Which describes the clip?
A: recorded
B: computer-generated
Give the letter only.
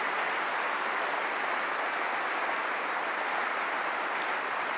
A